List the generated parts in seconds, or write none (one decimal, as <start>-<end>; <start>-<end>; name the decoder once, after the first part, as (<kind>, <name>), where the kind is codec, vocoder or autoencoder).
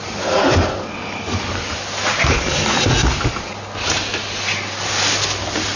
none